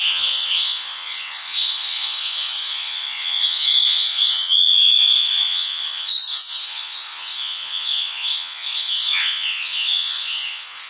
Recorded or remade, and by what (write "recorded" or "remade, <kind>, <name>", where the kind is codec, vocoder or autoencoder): remade, vocoder, Vocos